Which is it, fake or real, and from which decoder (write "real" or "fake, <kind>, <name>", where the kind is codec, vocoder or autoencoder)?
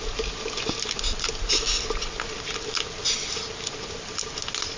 real